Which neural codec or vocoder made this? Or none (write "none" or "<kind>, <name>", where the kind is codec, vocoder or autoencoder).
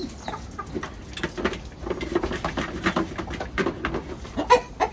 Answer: none